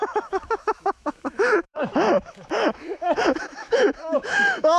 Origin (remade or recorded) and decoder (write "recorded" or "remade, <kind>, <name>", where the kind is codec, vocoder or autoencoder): remade, autoencoder, DAC-VAE